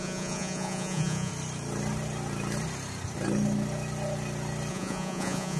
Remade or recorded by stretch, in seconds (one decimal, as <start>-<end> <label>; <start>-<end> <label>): 0.0-1.3 remade; 1.3-4.7 recorded; 4.7-5.6 remade